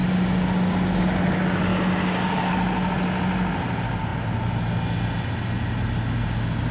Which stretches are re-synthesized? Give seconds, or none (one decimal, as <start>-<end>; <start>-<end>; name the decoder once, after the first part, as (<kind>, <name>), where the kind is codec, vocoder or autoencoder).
1.7-2.5 (codec, DAC)